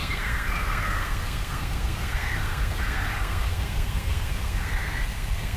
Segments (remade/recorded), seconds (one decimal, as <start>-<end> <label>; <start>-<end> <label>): 0.0-5.6 remade